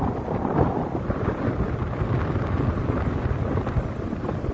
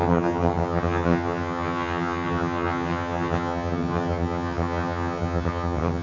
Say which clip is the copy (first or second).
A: second